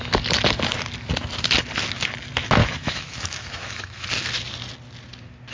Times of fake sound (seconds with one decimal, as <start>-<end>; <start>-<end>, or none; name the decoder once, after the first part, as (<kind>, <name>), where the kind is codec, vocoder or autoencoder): 2.6-4.1 (autoencoder, DAC-VAE)